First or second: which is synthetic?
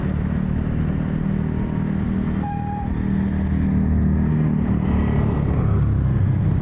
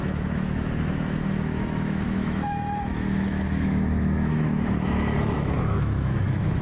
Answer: second